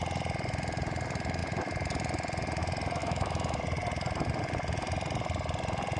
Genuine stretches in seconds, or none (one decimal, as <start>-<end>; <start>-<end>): 0.0-3.0; 3.6-6.0